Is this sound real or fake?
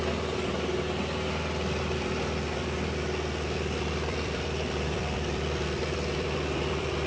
fake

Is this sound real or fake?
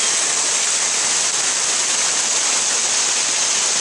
real